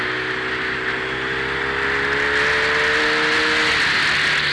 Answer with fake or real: real